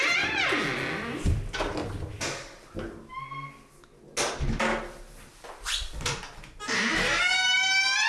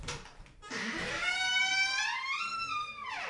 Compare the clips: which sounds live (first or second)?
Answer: first